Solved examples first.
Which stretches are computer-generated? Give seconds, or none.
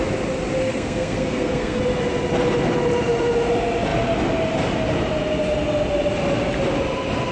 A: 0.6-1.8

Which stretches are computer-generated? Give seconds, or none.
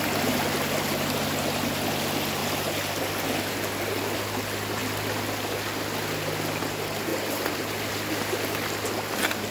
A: none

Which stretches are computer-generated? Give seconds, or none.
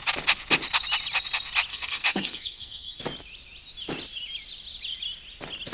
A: 1.7-3.0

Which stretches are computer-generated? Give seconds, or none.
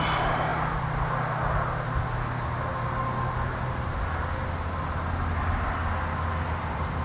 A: none